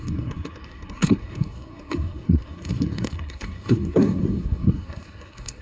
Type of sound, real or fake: fake